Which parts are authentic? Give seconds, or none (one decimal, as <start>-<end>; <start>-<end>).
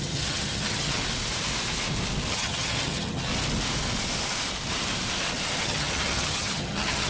1.0-2.3; 3.3-5.6